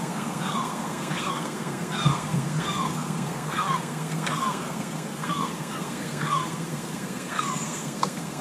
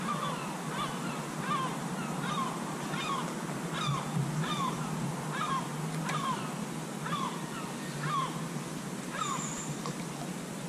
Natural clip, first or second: second